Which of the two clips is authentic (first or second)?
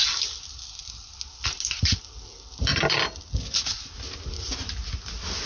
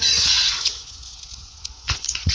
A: first